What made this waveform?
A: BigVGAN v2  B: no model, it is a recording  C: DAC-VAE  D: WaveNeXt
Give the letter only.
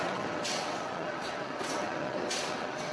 D